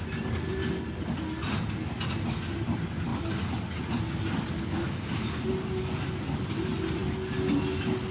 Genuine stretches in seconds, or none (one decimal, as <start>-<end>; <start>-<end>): 0.0-8.1